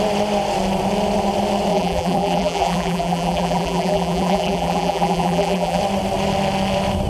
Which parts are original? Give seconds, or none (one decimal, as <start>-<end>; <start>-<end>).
0.0-1.7; 5.8-7.1